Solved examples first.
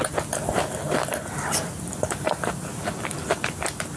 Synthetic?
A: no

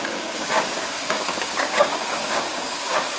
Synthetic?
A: yes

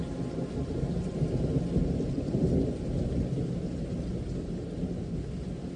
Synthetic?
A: no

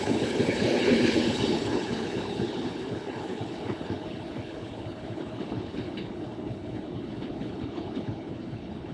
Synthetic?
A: yes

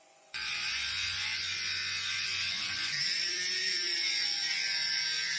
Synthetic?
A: yes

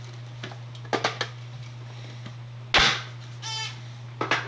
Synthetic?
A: no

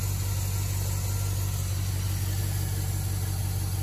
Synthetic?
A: no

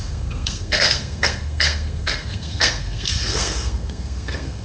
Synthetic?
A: yes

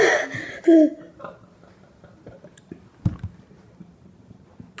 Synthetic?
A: no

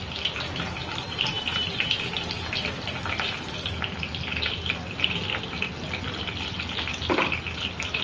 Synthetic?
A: no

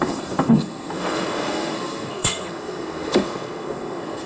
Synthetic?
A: yes